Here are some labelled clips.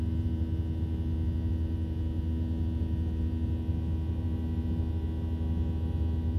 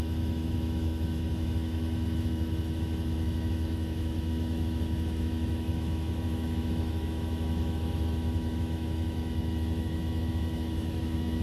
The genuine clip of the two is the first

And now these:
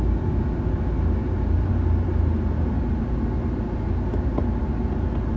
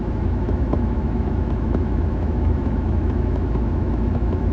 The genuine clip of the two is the first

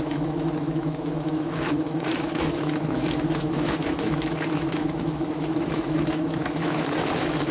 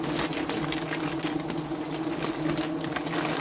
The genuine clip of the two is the second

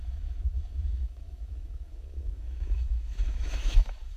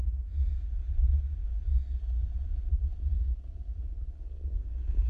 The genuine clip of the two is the second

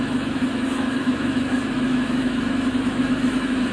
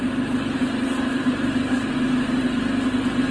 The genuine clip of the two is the second